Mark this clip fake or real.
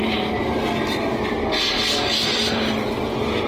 real